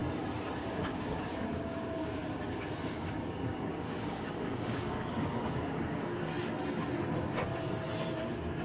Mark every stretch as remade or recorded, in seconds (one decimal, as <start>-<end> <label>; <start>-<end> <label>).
0.0-0.6 recorded; 0.6-2.2 remade; 2.2-2.9 recorded; 2.9-6.3 remade; 6.3-8.2 recorded; 8.2-8.6 remade